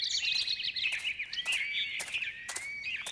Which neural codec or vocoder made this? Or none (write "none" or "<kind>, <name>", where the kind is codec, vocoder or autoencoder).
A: none